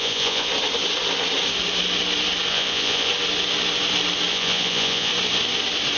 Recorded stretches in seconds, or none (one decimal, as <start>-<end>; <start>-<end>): 0.5-2.5; 3.1-4.3; 5.1-6.0